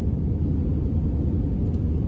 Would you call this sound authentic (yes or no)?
yes